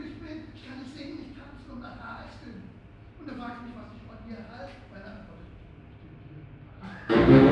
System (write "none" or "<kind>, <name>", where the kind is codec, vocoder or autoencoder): none